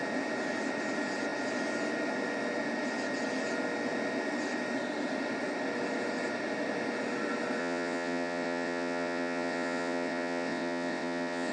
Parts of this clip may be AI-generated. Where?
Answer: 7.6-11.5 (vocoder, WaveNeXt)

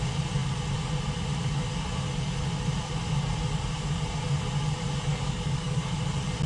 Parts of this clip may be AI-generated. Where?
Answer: 5.1-5.9 (codec, DAC)

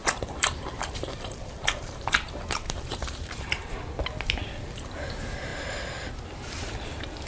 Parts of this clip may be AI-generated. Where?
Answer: 0.0-3.8 (vocoder, BigVGAN v2)

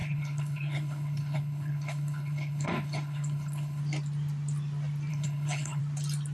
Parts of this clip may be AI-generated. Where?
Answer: 0.0-3.8 (codec, HILCodec); 5.1-5.8

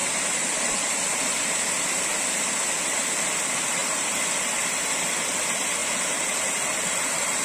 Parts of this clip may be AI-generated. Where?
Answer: 0.0-0.6 (vocoder, BigVGAN v2); 2.1-2.6; 3.8-5.0